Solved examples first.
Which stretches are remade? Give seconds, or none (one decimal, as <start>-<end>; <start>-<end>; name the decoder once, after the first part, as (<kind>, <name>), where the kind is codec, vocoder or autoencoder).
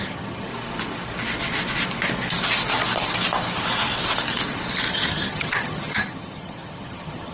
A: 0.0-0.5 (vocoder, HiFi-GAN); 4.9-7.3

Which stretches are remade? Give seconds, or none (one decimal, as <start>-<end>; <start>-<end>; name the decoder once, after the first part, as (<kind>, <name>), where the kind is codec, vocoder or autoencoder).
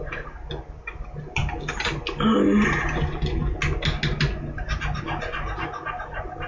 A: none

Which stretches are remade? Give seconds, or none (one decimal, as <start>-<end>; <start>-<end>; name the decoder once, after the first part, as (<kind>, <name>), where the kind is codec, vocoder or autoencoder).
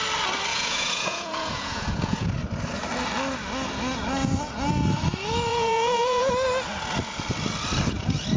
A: 0.5-2.3 (vocoder, Vocos); 5.5-6.3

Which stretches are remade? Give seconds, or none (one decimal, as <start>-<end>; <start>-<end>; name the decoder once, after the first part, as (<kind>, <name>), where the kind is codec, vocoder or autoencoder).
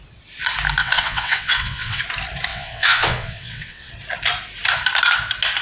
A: 0.8-2.0 (vocoder, WaveNeXt); 2.5-3.9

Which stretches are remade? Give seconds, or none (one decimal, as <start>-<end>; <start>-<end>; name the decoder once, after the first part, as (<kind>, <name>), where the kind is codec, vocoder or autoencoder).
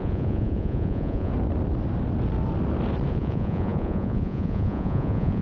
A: 0.0-1.3 (vocoder, Vocos); 3.1-5.4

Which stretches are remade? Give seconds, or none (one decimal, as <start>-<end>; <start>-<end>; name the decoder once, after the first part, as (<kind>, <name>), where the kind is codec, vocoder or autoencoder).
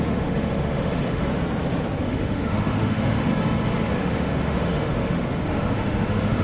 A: 0.0-1.3 (autoencoder, DAC-VAE); 2.0-3.3; 3.9-6.4